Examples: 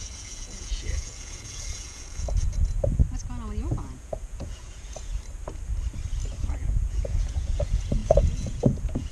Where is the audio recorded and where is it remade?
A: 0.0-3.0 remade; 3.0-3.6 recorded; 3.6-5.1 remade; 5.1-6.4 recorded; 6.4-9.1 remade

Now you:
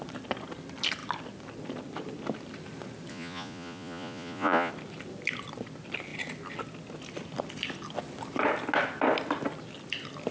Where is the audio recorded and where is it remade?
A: 0.0-3.1 recorded; 3.1-4.7 remade; 4.7-10.3 recorded

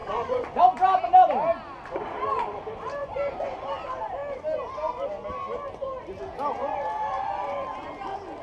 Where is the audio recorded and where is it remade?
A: 0.0-0.6 remade; 0.6-3.0 recorded; 3.0-3.7 remade; 3.7-8.4 recorded

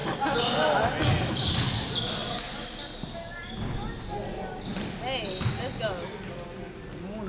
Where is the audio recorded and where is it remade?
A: 0.0-7.3 recorded

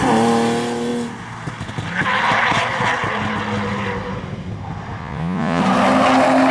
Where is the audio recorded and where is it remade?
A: 0.0-5.0 recorded; 5.0-5.6 remade; 5.6-6.5 recorded

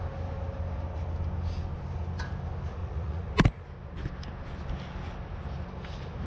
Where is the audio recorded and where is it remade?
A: 0.0-2.8 recorded; 2.8-3.3 remade; 3.3-6.3 recorded